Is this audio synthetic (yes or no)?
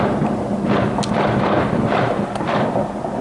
no